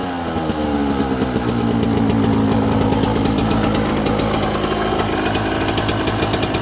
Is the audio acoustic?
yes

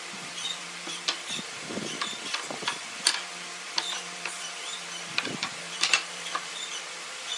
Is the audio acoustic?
no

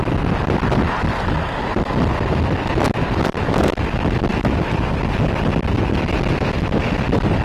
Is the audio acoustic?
yes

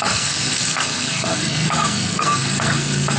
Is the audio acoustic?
no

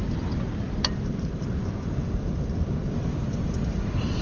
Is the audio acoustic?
yes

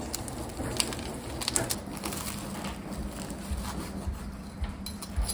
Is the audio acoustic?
yes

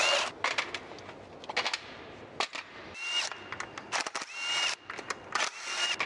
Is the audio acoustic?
yes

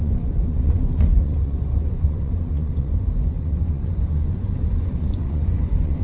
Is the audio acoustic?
no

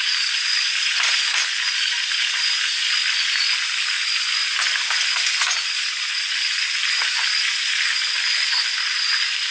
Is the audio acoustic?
yes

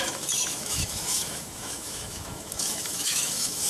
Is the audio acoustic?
no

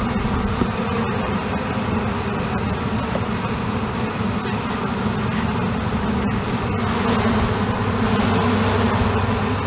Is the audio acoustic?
yes